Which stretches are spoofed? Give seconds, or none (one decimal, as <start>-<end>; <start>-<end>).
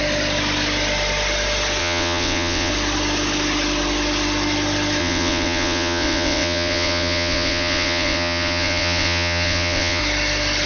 1.8-2.7; 5.0-10.0